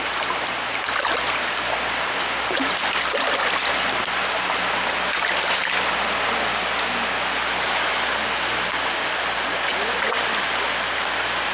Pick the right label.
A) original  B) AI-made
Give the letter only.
A